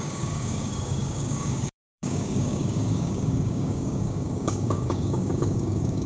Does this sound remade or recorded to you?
remade